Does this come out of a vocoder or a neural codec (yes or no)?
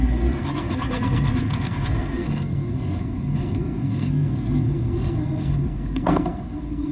yes